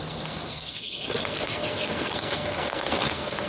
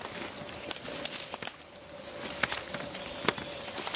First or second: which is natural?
second